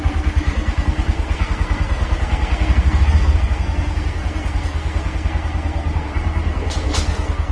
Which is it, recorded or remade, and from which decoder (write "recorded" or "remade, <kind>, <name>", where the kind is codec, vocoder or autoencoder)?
remade, codec, SNAC